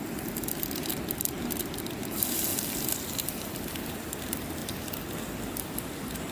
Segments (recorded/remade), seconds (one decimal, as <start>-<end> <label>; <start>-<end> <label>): 0.0-6.3 recorded